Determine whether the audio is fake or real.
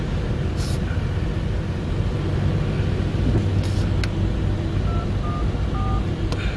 real